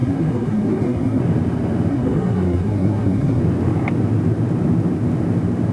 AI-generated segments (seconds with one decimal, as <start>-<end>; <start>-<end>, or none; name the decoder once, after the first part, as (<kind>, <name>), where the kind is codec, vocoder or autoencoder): 0.0-1.2 (codec, SNAC); 1.9-3.4